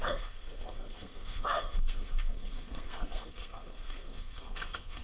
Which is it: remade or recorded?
remade